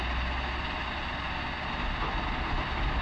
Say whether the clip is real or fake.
real